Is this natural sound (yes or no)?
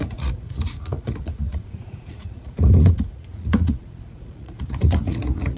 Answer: no